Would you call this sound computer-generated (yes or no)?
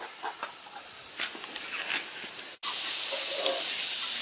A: no